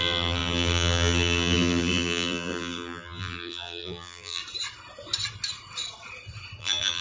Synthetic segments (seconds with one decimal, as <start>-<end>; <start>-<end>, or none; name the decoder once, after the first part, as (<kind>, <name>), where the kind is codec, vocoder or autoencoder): 0.0-4.4 (vocoder, BigVGAN v2); 6.6-7.0